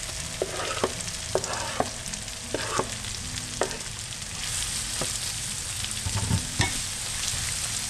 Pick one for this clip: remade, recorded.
recorded